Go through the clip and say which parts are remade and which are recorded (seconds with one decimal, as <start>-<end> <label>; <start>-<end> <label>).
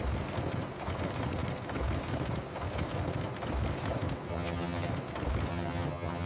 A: 0.0-4.3 recorded; 4.3-4.9 remade; 4.9-5.5 recorded; 5.5-6.3 remade